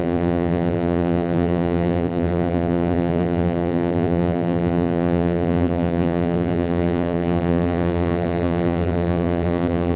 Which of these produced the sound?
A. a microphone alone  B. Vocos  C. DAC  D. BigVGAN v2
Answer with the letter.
D